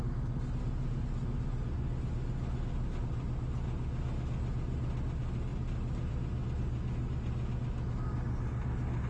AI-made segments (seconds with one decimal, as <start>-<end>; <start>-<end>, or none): none